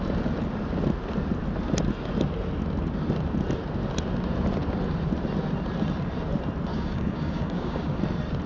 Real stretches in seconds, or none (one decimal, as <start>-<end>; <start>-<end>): 0.0-6.7; 8.0-8.5

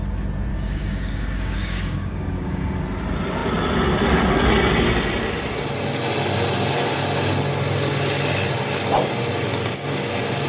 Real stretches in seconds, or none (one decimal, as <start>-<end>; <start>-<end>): 0.0-0.5; 2.8-9.5; 10.1-10.5

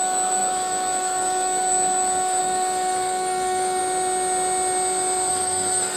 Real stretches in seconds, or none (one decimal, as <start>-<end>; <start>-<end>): 3.8-5.3

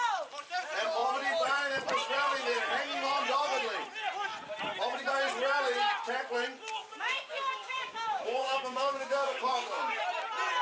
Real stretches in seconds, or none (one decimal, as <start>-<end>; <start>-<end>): 0.0-6.8; 10.0-10.6

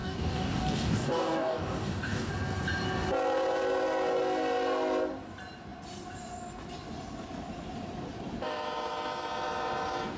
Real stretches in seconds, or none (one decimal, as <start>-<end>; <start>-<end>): 2.3-10.2

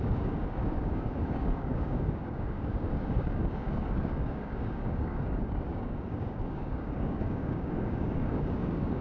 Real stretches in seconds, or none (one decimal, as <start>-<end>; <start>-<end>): none

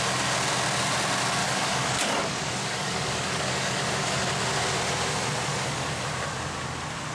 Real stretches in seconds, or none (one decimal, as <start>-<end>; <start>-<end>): 0.0-1.4; 4.2-5.5; 6.0-7.1